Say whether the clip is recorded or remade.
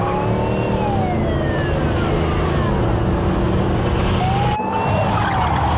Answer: recorded